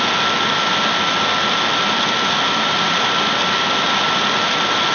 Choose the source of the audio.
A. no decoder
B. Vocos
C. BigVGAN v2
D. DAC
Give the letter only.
A